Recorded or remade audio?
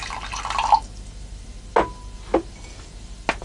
recorded